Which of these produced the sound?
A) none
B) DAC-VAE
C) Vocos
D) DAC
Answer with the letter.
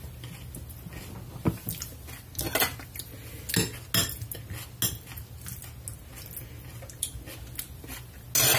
A